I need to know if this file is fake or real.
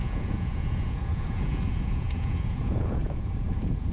fake